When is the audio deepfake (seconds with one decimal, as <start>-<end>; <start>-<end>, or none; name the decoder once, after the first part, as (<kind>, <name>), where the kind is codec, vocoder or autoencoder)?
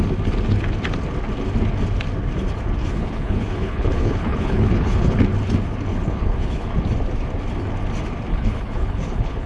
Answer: 2.8-5.2 (codec, HILCodec); 5.9-6.7; 8.3-9.5